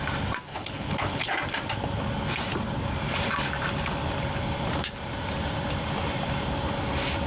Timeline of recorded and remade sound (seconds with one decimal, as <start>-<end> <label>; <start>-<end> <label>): 0.0-0.5 recorded; 0.5-1.3 remade; 1.3-7.3 recorded